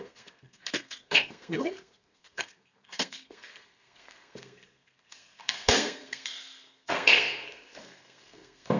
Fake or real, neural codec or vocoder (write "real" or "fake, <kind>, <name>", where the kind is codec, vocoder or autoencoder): fake, codec, SNAC